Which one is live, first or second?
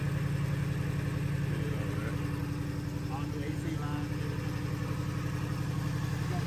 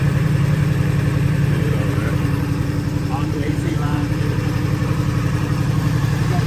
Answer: first